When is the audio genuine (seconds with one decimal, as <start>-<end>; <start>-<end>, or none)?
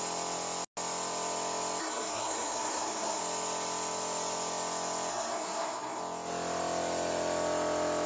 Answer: 0.0-1.8; 3.2-5.1; 6.0-8.1